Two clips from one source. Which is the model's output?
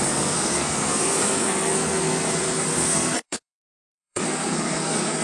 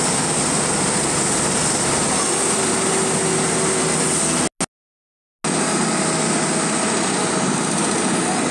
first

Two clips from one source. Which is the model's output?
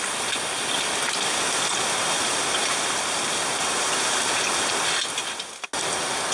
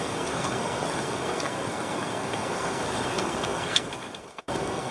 second